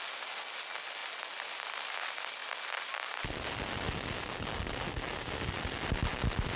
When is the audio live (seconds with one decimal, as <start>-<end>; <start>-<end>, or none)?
0.0-6.6